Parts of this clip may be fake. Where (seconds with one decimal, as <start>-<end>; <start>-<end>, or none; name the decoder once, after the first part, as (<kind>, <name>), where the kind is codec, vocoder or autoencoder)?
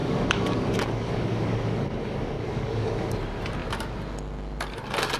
0.0-3.1 (codec, DAC)